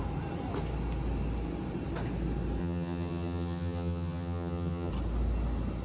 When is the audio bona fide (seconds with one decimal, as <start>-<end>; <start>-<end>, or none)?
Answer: 0.0-2.6; 4.9-5.8

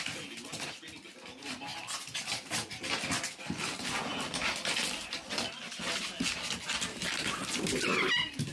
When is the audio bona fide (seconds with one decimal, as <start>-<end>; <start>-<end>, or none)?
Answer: 0.0-8.5

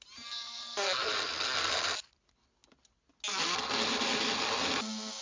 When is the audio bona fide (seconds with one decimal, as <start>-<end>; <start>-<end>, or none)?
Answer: 0.0-5.2

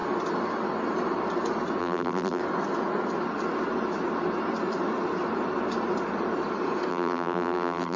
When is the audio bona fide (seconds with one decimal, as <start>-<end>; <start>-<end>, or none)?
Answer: 0.0-1.8; 2.4-6.9

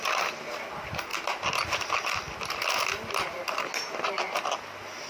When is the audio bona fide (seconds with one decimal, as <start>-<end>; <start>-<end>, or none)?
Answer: 0.0-5.1

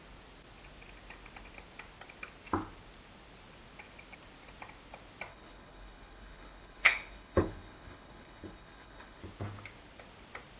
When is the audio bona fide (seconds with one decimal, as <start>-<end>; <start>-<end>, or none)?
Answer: 0.0-5.3; 9.2-10.6

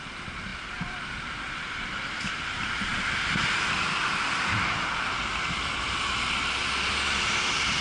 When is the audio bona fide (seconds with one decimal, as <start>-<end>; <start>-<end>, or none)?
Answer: 0.0-7.8